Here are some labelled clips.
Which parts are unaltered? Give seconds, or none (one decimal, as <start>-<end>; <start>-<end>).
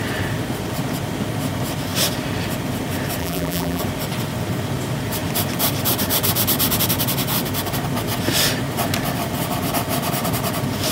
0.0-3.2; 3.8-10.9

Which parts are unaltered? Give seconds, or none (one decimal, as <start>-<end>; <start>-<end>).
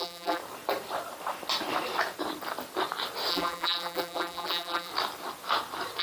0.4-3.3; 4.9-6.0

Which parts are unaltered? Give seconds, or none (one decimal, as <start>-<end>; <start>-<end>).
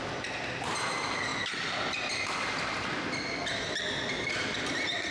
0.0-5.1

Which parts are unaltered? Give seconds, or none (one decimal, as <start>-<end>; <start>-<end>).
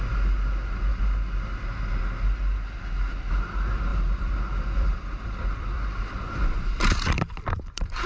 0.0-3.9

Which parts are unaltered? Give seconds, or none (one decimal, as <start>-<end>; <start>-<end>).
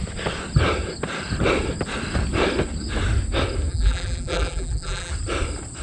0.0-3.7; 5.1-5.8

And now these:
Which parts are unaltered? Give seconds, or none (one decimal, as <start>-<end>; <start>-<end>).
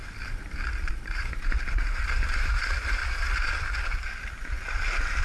0.0-0.9; 3.0-5.2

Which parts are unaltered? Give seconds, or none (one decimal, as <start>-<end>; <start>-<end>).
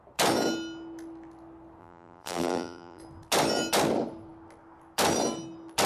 0.0-1.8; 3.0-5.9